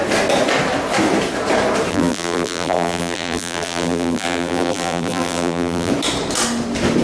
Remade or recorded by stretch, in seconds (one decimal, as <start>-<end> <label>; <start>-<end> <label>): 0.0-1.9 recorded; 1.9-5.9 remade; 5.9-7.0 recorded